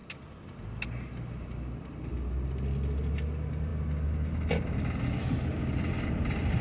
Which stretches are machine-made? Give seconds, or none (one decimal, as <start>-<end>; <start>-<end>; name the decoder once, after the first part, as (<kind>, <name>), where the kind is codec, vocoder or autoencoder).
none